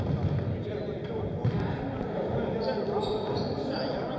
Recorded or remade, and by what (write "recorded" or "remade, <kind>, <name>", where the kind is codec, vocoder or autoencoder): recorded